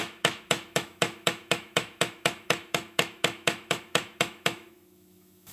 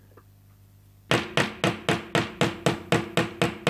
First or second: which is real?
second